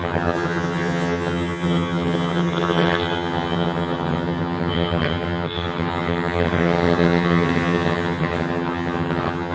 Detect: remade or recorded remade